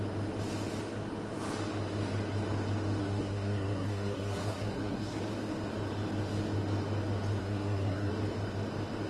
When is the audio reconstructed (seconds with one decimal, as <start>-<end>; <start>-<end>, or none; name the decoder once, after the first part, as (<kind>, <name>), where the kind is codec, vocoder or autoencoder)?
3.0-5.2 (codec, SNAC); 7.4-8.1

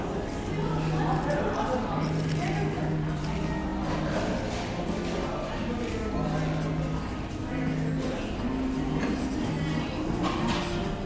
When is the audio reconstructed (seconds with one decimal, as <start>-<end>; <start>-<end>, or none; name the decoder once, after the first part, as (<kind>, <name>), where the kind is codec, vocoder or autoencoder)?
none

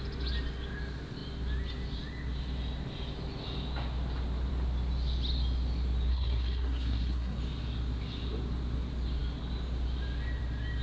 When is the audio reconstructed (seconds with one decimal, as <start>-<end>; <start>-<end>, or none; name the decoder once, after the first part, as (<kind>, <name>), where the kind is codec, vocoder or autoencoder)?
6.1-7.4 (codec, SNAC)

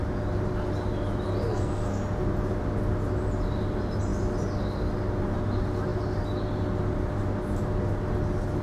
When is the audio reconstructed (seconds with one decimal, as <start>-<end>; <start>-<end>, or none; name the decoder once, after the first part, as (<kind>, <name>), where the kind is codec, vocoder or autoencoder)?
1.5-2.0 (codec, SNAC)